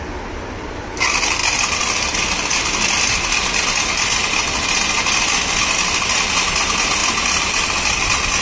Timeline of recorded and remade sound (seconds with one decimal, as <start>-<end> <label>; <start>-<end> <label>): 0.0-8.4 recorded